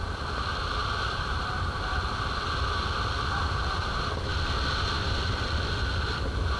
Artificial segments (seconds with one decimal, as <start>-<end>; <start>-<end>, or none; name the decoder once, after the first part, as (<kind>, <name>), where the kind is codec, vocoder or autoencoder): 0.8-1.7 (vocoder, BigVGAN v2)